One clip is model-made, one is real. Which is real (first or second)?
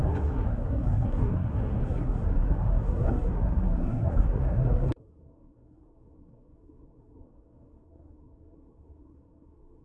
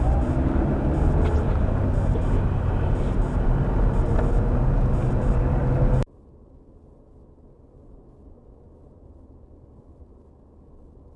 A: second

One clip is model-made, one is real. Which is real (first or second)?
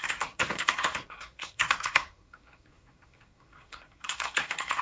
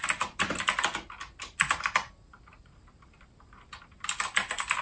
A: second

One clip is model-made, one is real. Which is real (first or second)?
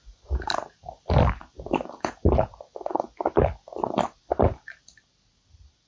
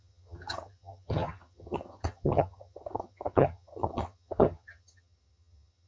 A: first